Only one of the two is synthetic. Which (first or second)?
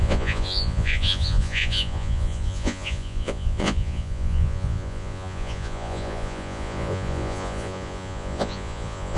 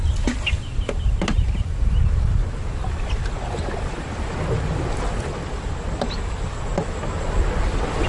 first